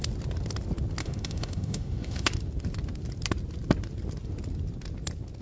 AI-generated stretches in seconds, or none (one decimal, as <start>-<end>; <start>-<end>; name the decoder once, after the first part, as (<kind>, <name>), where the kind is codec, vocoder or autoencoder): 1.0-2.3 (autoencoder, DAC-VAE)